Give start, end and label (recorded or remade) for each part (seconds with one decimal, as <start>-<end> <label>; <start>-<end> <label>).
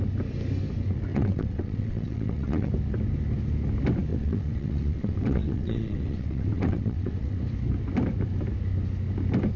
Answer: 0.0-1.1 recorded; 1.1-2.7 remade; 2.7-4.1 recorded; 4.1-7.4 remade; 7.4-9.6 recorded